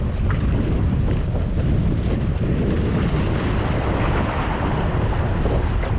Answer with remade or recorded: recorded